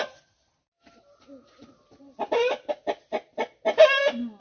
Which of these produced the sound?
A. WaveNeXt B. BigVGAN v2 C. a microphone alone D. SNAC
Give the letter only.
C